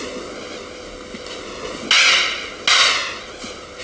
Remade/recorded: recorded